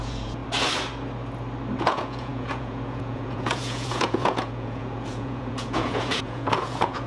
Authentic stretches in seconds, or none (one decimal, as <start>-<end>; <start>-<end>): 0.4-1.8